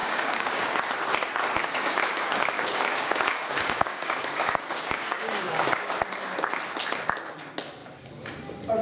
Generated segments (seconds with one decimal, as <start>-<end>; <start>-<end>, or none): 0.0-0.8; 1.6-5.9